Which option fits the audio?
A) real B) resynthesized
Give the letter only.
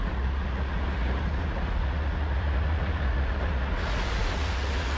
B